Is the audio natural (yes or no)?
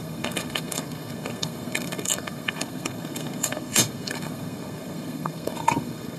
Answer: no